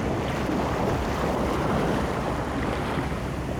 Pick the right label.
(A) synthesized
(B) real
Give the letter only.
B